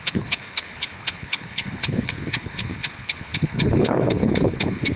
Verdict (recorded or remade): remade